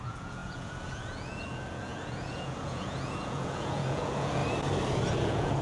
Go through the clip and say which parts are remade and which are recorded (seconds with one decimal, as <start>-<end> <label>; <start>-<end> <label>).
0.0-4.4 remade; 4.4-5.1 recorded; 5.1-5.6 remade